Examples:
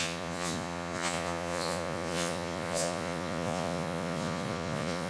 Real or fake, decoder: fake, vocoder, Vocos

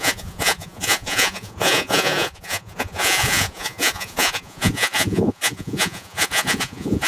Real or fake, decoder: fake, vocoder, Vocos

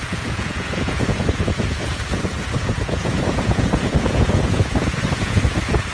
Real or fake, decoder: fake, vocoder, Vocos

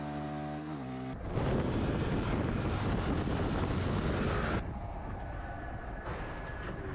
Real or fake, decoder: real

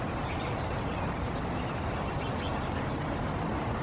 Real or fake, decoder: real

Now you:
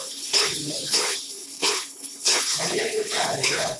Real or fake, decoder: fake, codec, HILCodec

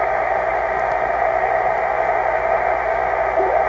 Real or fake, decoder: real